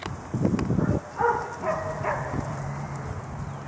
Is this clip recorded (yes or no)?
yes